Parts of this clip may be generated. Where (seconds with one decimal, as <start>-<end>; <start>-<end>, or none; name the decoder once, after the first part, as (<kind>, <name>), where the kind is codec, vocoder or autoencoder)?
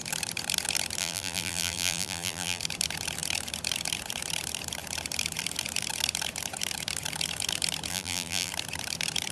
1.0-2.6 (vocoder, BigVGAN v2); 7.9-8.5